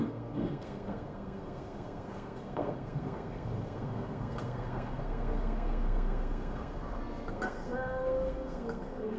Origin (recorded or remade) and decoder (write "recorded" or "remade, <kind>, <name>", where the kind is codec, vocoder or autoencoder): remade, codec, SNAC